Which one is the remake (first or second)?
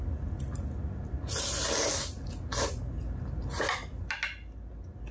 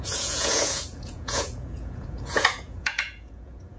second